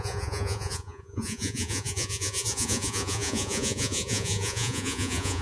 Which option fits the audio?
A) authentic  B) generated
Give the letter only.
B